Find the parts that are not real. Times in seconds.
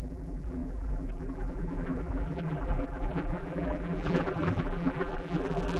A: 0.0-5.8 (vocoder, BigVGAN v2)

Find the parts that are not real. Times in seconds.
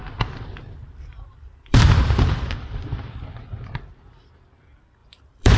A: 0.0-3.4 (vocoder, BigVGAN v2); 5.0-5.6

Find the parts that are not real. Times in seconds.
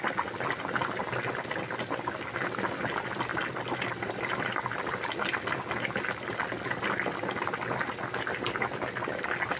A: 3.3-4.5 (vocoder, BigVGAN v2)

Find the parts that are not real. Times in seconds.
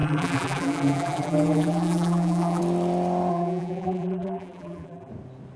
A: 0.0-2.6 (vocoder, BigVGAN v2); 3.3-5.1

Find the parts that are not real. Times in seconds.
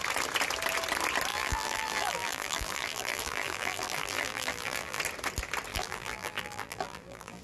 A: 1.3-5.0 (vocoder, BigVGAN v2); 5.7-7.4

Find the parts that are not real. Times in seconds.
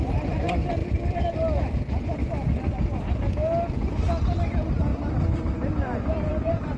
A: 0.8-1.6 (vocoder, BigVGAN v2); 4.9-6.8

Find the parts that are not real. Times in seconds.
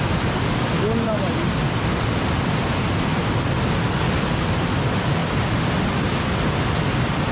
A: 0.0-3.1 (vocoder, BigVGAN v2); 4.2-5.2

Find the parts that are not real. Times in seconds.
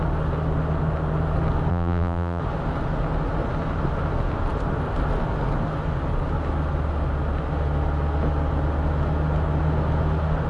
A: 1.7-2.4 (vocoder, BigVGAN v2)